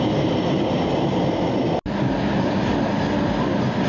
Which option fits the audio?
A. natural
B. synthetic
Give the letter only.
A